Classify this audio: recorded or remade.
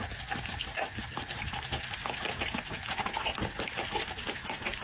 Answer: recorded